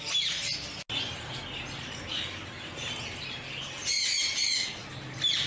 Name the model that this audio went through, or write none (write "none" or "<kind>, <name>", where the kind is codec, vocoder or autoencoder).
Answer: none